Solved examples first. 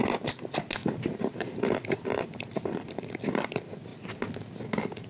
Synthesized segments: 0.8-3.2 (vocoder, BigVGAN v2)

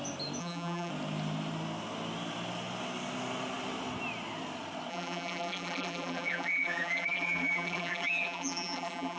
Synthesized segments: 0.4-0.9 (vocoder, BigVGAN v2); 4.9-9.2

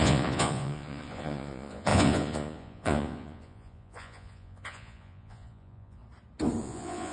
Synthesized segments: 0.0-6.0 (vocoder, Vocos); 6.6-7.1

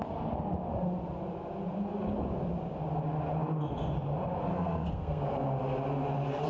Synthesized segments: 4.5-5.3 (codec, SNAC)